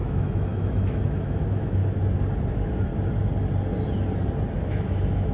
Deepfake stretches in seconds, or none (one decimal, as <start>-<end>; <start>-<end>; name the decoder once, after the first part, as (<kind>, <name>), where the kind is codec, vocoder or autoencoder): 0.0-1.8 (autoencoder, DAC-VAE); 2.5-2.9; 4.6-5.3